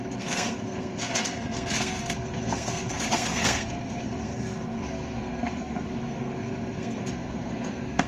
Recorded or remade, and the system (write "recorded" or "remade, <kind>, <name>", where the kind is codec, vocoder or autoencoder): remade, codec, SNAC